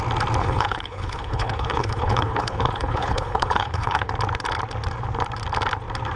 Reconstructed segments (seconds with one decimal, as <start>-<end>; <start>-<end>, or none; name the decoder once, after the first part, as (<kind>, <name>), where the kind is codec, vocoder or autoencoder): 0.4-4.1 (codec, HILCodec)